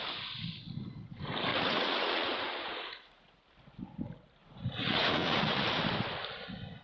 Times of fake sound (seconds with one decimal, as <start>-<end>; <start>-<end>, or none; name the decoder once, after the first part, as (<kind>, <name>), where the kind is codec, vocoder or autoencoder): 1.5-3.4 (vocoder, Vocos); 4.4-5.8